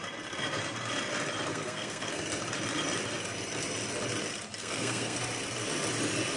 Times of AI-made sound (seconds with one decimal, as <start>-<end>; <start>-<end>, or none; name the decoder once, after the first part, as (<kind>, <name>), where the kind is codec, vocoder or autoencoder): 1.5-2.2 (codec, SNAC); 4.6-5.2